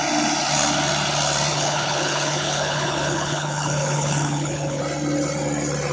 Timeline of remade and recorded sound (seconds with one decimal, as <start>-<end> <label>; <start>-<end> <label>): 0.0-1.5 recorded; 1.5-4.8 remade; 4.8-5.9 recorded